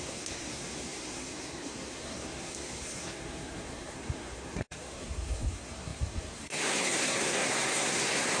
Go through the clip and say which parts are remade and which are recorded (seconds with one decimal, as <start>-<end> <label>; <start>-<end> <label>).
0.0-8.4 remade